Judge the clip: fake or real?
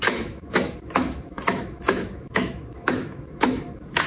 fake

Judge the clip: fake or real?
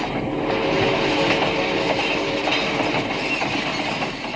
real